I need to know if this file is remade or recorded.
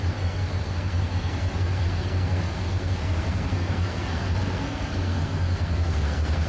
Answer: remade